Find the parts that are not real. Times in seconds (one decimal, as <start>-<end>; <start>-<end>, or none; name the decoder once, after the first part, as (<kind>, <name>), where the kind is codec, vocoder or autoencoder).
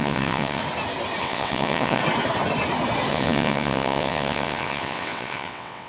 0.0-0.6 (vocoder, WaveNeXt); 1.2-2.0; 3.1-5.9